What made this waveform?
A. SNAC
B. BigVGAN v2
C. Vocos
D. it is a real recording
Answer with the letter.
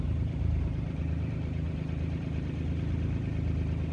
B